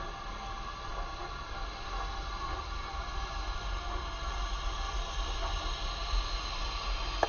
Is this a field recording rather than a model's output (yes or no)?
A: yes